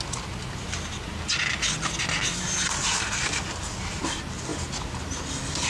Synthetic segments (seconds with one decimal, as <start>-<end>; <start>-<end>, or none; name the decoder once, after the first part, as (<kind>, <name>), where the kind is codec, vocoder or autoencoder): none